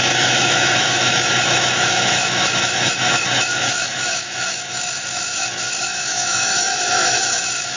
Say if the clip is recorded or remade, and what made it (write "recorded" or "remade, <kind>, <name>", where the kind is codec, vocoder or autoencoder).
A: remade, autoencoder, DAC-VAE